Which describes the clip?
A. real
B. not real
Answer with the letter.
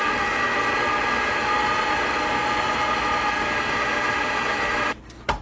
A